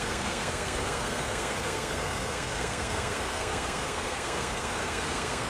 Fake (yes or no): yes